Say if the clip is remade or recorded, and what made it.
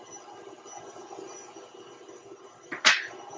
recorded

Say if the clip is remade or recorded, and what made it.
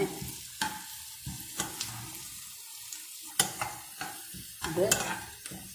recorded